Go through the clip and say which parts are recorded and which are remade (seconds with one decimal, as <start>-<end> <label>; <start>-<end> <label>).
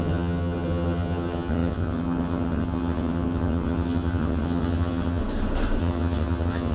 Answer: 0.0-5.2 remade; 5.2-5.8 recorded; 5.8-6.7 remade